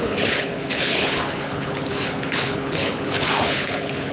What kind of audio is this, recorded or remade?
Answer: remade